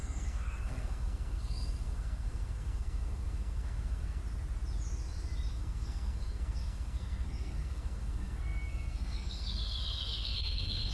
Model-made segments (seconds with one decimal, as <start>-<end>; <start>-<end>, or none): 0.0-4.2; 5.5-10.9